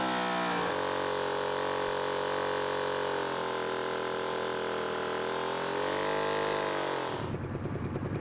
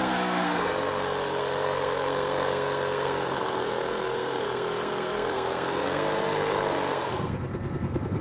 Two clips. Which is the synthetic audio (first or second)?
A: second